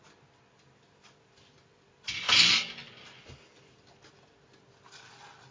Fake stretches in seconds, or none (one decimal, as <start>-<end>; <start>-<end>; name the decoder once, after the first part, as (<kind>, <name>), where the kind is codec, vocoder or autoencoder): 2.8-3.7 (vocoder, BigVGAN v2)